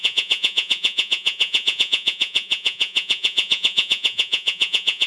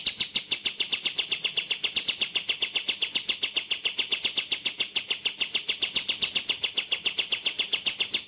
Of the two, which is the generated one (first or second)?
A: first